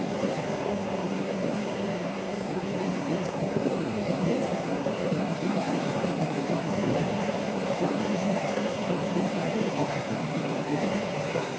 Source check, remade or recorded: remade